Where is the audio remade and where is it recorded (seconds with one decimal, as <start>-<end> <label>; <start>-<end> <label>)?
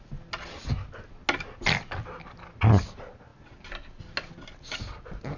0.0-5.4 recorded